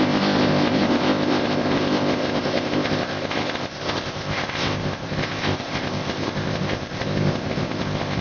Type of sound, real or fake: fake